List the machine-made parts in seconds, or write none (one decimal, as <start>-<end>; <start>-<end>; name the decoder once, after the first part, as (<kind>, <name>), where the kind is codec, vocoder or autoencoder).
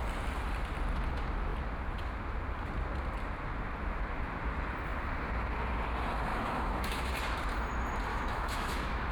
6.3-7.1 (autoencoder, DAC-VAE); 8.1-9.1